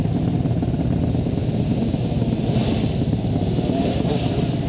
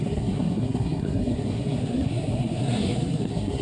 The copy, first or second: second